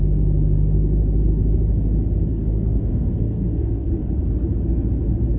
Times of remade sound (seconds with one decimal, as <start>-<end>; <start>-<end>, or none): 2.3-3.9